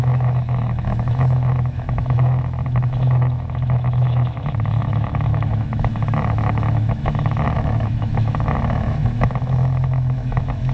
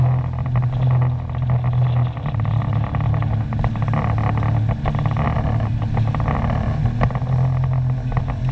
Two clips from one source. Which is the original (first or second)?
second